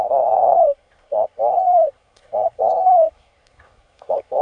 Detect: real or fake fake